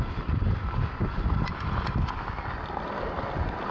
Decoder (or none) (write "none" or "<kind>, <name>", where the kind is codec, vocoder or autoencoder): none